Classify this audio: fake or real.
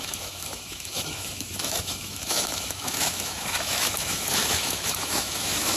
fake